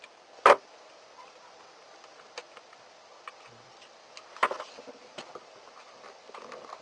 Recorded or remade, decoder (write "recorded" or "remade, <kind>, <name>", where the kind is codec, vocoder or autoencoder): recorded